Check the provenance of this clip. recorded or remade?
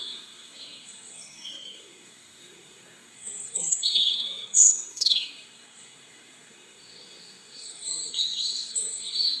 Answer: remade